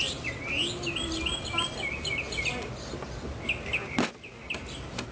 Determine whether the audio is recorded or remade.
recorded